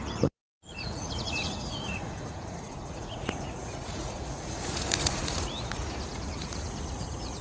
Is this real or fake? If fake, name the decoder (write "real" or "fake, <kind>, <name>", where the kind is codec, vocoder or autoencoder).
fake, vocoder, Vocos